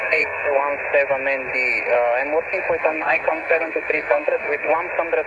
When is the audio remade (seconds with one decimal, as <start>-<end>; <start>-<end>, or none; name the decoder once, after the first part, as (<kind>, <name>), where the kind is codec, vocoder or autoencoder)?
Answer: 0.0-0.7 (codec, SNAC); 2.8-4.7